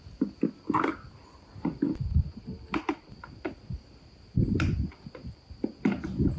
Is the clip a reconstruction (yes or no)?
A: no